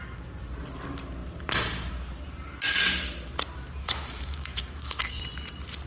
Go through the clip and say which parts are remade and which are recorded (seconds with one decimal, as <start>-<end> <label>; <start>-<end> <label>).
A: 0.0-3.8 recorded; 3.8-5.2 remade; 5.2-5.9 recorded